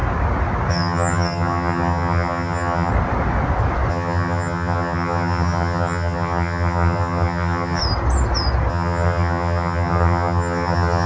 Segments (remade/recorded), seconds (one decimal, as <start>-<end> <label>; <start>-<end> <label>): 0.0-0.7 recorded; 0.7-2.9 remade; 2.9-3.9 recorded; 3.9-7.8 remade; 7.8-8.7 recorded; 8.7-11.1 remade